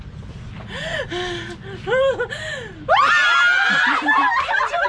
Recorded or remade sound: recorded